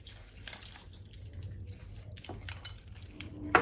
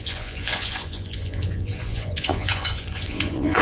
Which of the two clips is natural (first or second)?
first